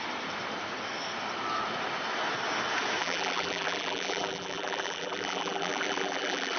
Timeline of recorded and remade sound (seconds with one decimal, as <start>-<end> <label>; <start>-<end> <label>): 0.0-3.0 recorded; 3.0-6.6 remade

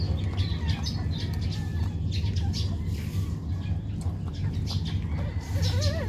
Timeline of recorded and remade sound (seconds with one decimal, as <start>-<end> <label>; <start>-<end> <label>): 0.0-6.1 recorded

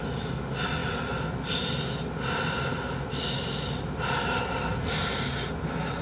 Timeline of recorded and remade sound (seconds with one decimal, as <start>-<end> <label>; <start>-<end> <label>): 0.0-6.0 recorded

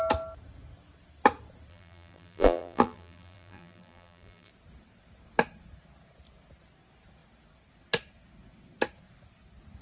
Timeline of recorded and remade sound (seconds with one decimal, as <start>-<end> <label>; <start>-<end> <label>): 0.0-1.7 recorded; 1.7-4.5 remade; 4.5-9.8 recorded

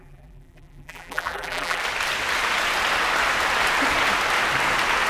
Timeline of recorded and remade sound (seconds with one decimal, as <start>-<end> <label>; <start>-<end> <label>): 0.0-1.8 remade; 1.8-5.1 recorded

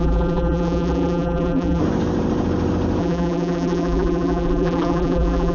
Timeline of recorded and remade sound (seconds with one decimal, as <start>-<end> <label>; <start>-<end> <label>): 0.0-1.8 remade; 1.8-3.0 recorded; 3.0-5.5 remade

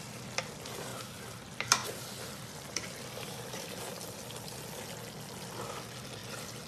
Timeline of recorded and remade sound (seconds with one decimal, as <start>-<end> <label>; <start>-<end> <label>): 0.0-1.8 recorded; 1.8-4.3 remade; 4.3-6.2 recorded; 6.2-6.7 remade